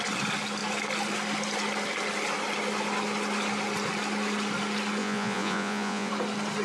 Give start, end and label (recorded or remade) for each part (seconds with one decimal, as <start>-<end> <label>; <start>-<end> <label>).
0.0-5.0 recorded; 5.0-6.1 remade; 6.1-6.6 recorded